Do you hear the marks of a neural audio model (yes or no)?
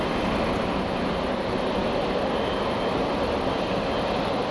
no